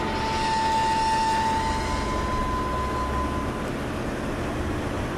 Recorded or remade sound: recorded